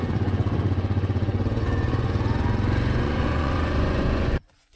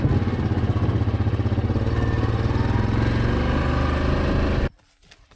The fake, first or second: first